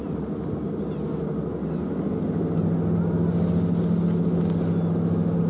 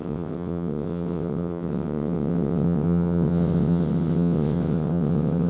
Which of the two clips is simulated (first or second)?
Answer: second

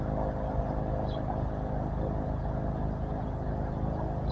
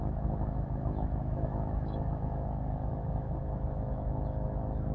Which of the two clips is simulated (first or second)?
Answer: second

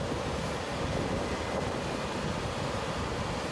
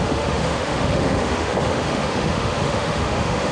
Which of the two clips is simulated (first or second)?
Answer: second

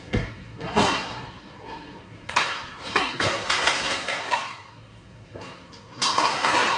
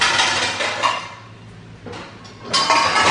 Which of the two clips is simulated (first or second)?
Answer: first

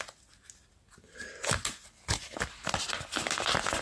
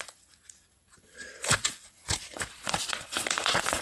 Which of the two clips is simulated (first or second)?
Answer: second